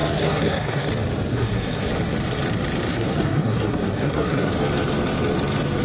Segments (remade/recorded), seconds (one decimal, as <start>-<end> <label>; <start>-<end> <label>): 0.0-0.9 remade; 0.9-1.3 recorded; 1.3-1.9 remade; 1.9-2.9 recorded; 2.9-4.5 remade; 4.5-5.8 recorded